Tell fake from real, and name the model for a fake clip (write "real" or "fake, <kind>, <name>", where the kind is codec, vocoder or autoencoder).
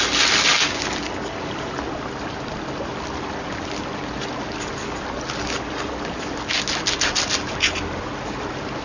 real